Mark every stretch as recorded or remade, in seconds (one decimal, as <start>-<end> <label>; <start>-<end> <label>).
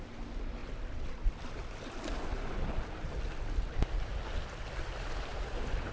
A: 0.0-0.6 recorded; 0.6-4.1 remade; 4.1-5.9 recorded